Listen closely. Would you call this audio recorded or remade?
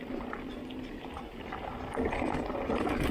recorded